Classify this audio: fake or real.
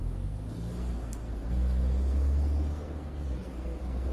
fake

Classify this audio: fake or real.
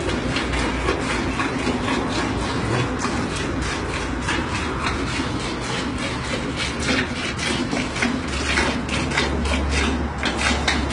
real